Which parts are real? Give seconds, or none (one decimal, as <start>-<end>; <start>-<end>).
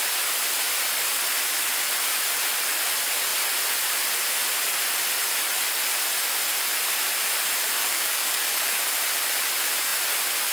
0.0-7.8; 8.8-10.5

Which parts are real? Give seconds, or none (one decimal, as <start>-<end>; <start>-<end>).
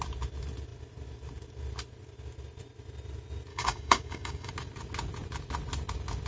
0.0-3.5; 4.5-6.3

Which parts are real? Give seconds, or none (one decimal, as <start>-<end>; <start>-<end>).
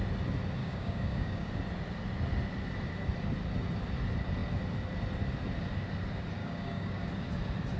0.0-0.6; 1.5-6.4; 7.1-7.8